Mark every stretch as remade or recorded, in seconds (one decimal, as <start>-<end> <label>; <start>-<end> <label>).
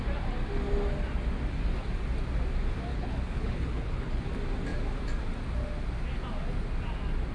0.0-2.9 recorded; 2.9-4.2 remade; 4.2-7.3 recorded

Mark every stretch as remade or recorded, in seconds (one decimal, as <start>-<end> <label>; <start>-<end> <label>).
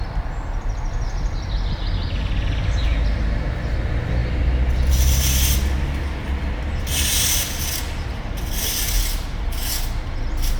0.0-10.6 recorded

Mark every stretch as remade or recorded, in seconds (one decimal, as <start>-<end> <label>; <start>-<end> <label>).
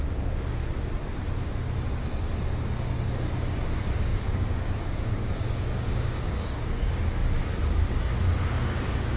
0.0-0.6 remade; 0.6-2.6 recorded; 2.6-7.2 remade; 7.2-8.4 recorded; 8.4-9.2 remade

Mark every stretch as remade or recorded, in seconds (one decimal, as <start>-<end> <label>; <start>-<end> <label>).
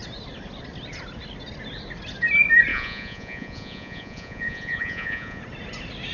0.0-2.7 recorded; 2.7-5.4 remade; 5.4-6.1 recorded